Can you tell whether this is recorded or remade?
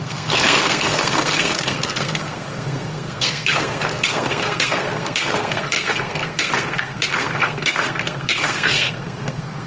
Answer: remade